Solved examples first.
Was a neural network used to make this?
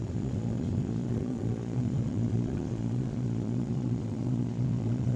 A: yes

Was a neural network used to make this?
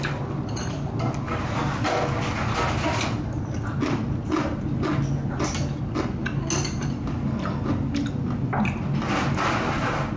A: no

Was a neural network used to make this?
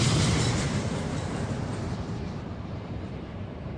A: yes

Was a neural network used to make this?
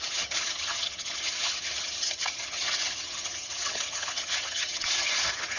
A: yes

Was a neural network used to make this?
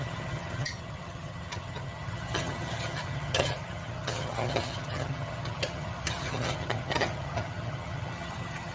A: yes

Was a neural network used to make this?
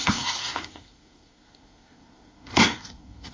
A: yes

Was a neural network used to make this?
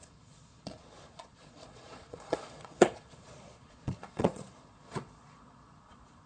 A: yes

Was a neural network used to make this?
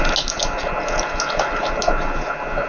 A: no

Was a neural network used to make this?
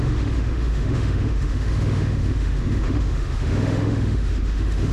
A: yes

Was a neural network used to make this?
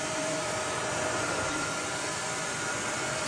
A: yes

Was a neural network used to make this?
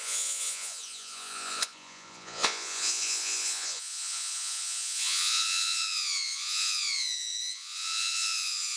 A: yes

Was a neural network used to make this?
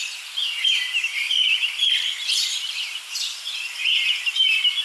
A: yes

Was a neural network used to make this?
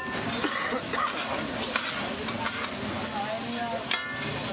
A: no